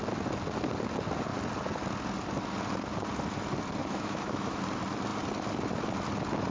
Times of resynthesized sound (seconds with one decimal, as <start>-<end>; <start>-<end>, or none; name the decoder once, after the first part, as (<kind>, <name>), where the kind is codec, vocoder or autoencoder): 3.8-4.6 (autoencoder, DAC-VAE)